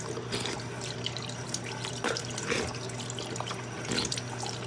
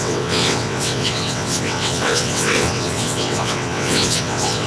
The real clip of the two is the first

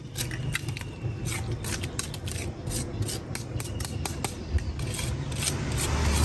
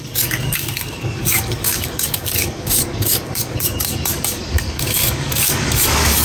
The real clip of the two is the first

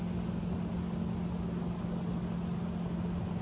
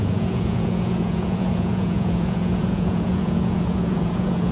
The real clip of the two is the first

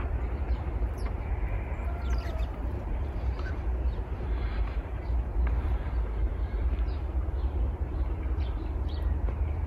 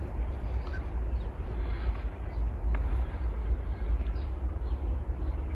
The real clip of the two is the second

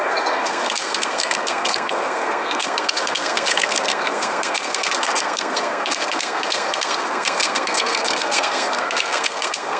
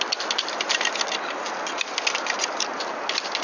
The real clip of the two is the second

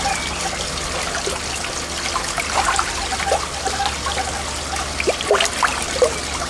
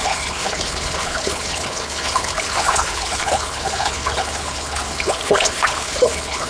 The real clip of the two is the first